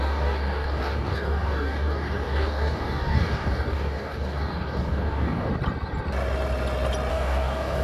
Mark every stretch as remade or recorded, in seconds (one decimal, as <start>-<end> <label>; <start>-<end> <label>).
0.0-5.5 remade; 5.5-7.1 recorded; 7.1-7.8 remade